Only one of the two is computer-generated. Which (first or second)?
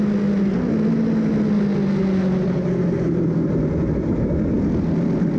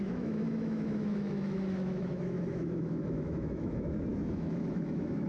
second